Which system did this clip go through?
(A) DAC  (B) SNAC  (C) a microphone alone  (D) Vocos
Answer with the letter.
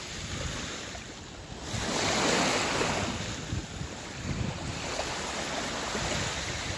C